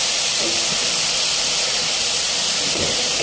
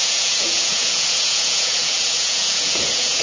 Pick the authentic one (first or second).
first